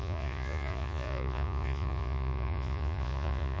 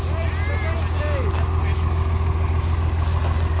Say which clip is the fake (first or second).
first